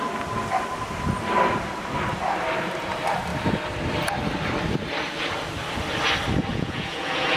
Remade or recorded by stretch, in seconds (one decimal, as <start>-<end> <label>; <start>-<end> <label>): 0.0-6.5 recorded; 6.5-7.4 remade